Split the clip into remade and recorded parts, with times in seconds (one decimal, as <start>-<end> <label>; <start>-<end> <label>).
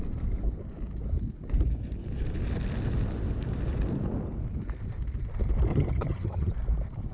0.0-5.7 recorded; 5.7-6.5 remade; 6.5-7.1 recorded